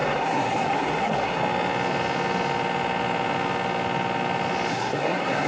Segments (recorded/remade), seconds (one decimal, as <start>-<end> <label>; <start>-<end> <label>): 0.0-1.4 remade; 1.4-4.7 recorded; 4.7-5.5 remade